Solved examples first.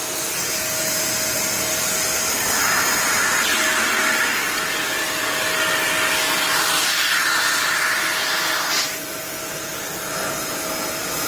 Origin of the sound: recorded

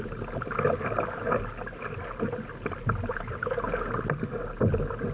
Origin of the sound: recorded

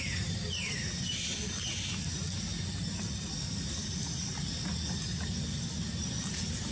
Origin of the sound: recorded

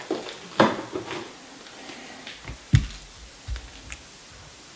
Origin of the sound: recorded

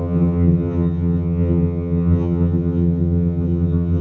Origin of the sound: remade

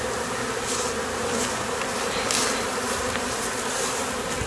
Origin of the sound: recorded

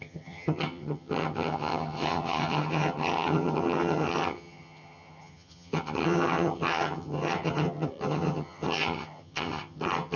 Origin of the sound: remade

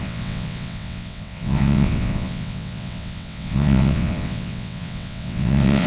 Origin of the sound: remade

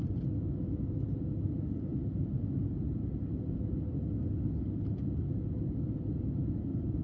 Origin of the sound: recorded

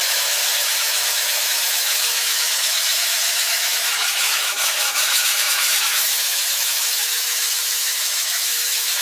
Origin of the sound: remade